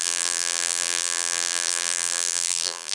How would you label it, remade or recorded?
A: remade